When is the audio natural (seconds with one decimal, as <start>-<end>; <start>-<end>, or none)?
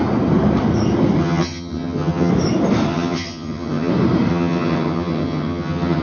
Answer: 0.0-1.2; 2.3-2.9; 3.9-4.3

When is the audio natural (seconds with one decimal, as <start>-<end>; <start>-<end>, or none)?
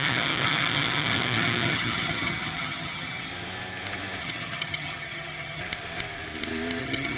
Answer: 3.3-4.2; 5.6-6.8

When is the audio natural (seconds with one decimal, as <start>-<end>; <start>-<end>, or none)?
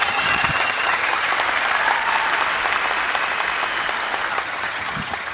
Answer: 1.3-4.3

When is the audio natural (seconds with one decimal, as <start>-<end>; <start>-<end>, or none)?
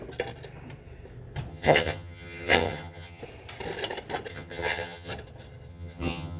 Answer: 0.0-1.5; 3.2-4.3; 5.1-5.7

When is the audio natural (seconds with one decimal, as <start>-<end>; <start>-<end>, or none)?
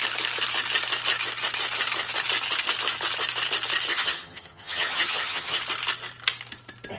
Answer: 0.0-3.9; 5.6-7.0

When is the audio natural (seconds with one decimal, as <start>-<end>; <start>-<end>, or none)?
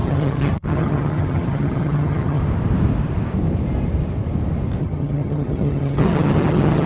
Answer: 2.4-4.8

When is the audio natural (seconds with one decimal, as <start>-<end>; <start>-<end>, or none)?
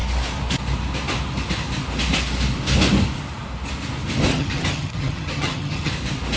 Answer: 0.0-4.3; 5.9-6.4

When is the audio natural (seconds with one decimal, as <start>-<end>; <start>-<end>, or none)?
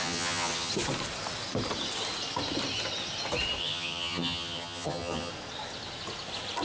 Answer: 0.7-3.6; 5.3-6.6